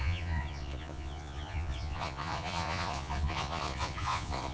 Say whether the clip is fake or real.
fake